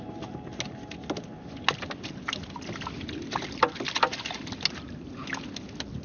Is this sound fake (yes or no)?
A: no